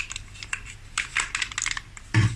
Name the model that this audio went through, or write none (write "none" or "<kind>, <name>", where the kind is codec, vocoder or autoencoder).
none